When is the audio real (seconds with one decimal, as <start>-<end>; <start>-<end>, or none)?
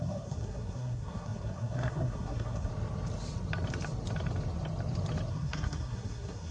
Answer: 2.7-5.3